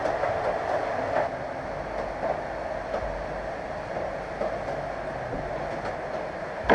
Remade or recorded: recorded